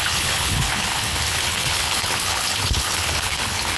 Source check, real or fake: fake